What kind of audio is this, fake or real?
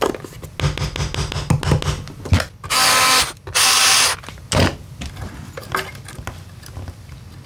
real